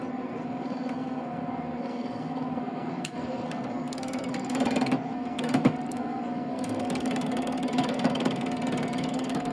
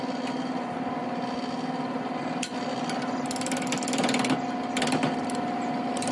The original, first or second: second